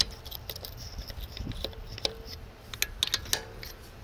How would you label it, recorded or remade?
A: recorded